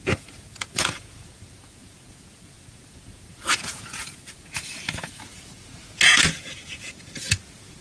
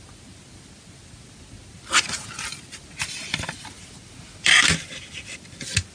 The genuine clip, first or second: second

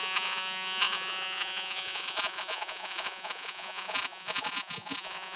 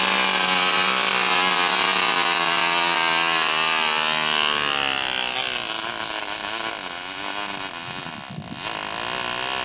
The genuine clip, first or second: second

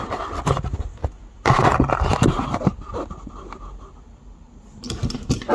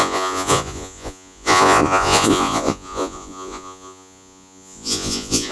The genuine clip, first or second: first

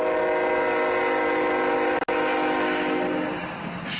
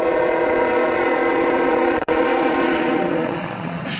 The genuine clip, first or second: first